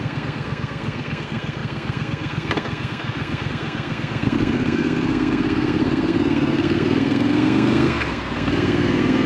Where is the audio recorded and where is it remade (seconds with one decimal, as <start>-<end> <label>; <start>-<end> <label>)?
0.0-9.3 remade